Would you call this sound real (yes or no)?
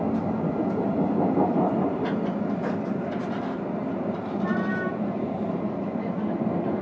yes